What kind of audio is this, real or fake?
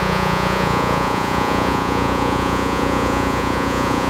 fake